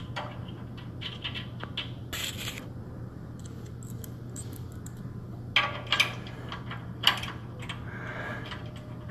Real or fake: real